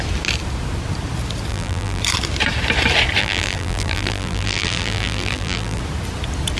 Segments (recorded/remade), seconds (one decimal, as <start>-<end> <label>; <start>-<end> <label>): 0.0-1.5 recorded; 1.5-2.0 remade; 2.0-3.2 recorded; 3.2-5.8 remade; 5.8-6.6 recorded